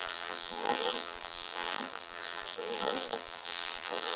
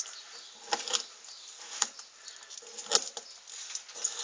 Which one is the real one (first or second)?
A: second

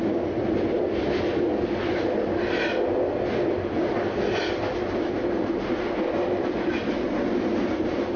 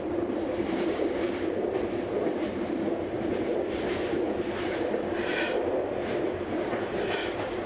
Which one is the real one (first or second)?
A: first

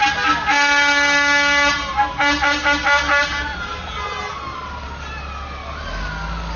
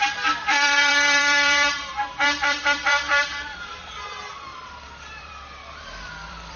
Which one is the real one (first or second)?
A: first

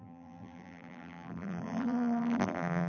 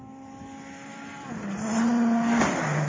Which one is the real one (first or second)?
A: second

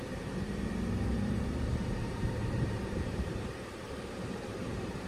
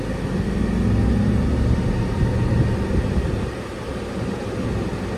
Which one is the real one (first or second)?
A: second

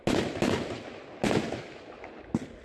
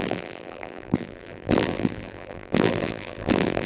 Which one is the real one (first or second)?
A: first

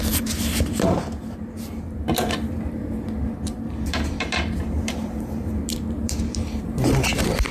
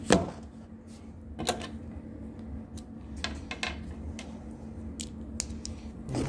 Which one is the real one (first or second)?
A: second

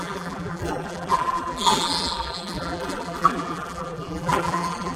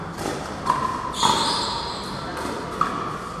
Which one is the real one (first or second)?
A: second